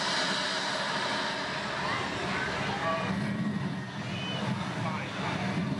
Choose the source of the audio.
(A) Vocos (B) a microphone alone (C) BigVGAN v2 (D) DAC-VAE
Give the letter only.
B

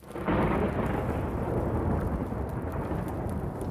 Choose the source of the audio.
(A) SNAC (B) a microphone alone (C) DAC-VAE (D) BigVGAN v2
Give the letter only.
B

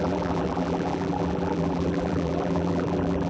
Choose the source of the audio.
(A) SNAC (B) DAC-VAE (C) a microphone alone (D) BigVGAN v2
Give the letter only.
D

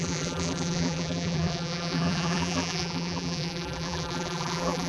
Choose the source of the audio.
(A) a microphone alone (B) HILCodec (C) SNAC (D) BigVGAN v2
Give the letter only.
D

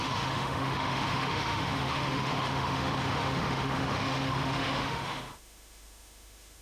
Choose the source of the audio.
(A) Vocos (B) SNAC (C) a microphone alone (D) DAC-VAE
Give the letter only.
D